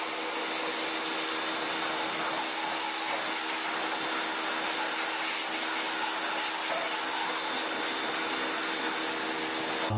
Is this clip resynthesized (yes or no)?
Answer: no